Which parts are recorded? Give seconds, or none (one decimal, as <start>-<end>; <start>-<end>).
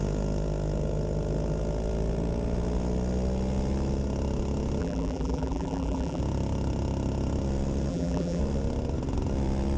0.0-4.8; 6.2-7.9; 8.4-9.8